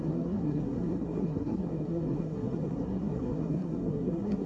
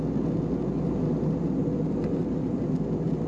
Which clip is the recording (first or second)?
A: second